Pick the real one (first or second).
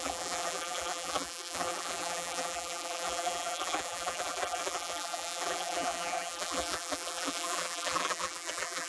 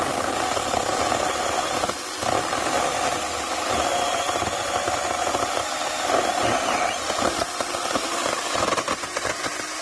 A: second